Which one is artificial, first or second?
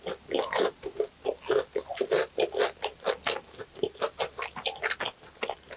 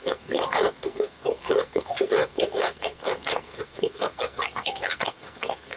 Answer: second